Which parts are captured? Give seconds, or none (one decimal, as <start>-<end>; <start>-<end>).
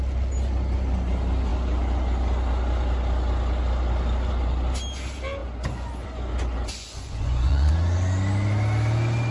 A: 0.0-5.4; 7.7-9.3